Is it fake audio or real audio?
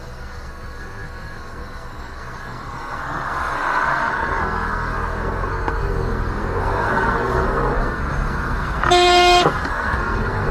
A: fake